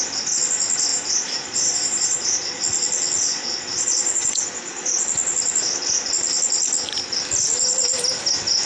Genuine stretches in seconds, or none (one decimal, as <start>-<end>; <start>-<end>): 0.0-0.9; 2.6-3.3; 4.5-8.7